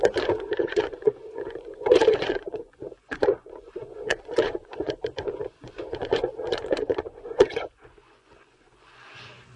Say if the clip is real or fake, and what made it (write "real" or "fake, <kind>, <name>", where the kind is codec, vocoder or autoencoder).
fake, vocoder, Vocos